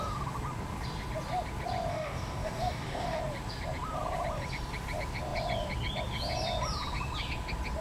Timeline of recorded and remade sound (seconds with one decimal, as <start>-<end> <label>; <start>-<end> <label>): 0.0-1.9 recorded; 1.9-3.2 remade; 3.2-7.8 recorded